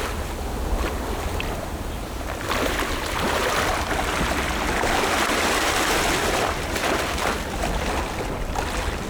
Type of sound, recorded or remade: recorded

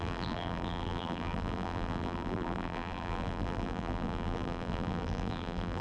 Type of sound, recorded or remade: remade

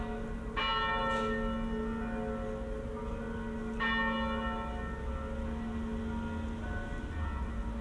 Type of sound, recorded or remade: recorded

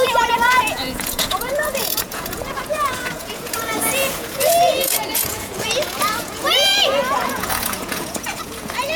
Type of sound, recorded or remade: remade